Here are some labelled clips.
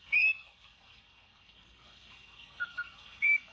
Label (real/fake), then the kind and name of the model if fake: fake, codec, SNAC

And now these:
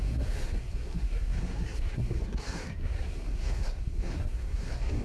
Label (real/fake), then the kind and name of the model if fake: fake, codec, SNAC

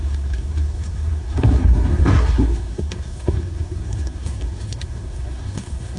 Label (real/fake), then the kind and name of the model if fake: fake, codec, SNAC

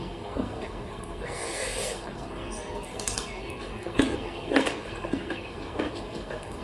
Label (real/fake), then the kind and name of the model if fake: fake, codec, SNAC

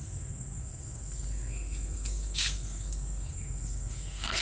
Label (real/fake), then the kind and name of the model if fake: fake, codec, SNAC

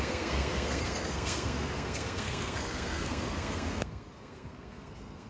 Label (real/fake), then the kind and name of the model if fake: fake, codec, SNAC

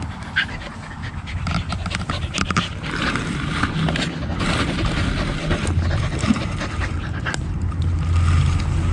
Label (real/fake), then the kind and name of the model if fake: real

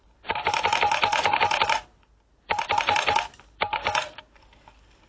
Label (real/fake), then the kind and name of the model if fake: real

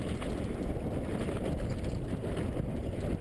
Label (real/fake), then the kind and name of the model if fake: real